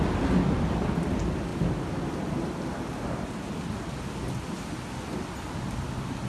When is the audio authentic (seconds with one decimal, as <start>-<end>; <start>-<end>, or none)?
0.0-6.3